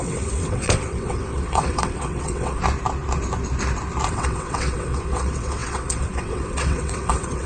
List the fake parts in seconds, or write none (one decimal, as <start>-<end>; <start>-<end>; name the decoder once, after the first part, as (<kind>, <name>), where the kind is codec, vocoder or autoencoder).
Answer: 0.0-2.6 (vocoder, WaveNeXt); 4.1-7.5